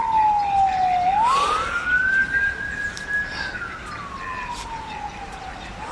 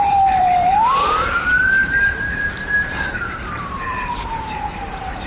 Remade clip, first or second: second